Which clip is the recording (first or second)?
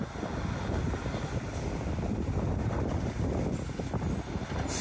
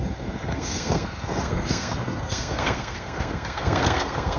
first